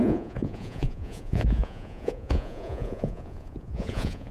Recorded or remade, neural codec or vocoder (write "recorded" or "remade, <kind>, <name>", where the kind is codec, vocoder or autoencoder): remade, vocoder, Vocos